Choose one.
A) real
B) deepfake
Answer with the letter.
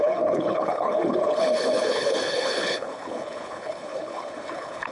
B